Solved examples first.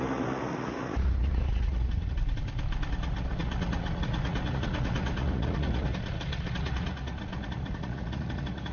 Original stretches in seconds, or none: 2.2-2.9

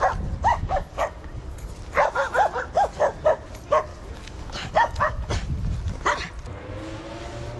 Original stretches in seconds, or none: 0.0-0.5; 1.7-3.9; 5.3-7.6

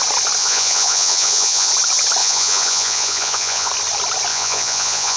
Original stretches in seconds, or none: 0.0-0.4; 1.7-2.2; 3.7-4.3

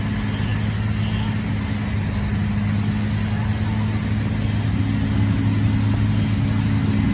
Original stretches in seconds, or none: 0.0-7.1

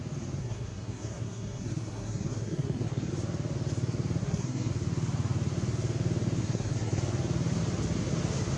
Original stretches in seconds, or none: 0.0-0.4; 3.1-4.2; 4.7-6.4; 7.0-8.6

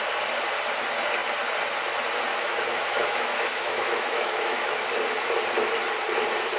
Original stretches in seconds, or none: 0.0-2.3; 4.8-6.6

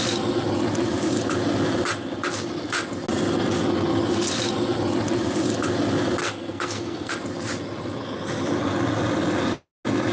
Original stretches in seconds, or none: 0.0-6.2; 7.1-10.1

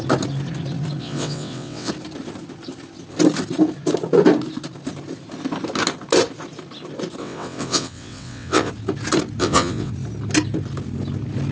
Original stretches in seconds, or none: 0.0-1.0; 1.9-7.2; 8.7-9.4; 9.9-11.5